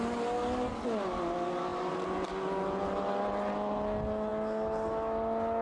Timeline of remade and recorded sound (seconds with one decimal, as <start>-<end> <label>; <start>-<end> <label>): 0.0-5.6 recorded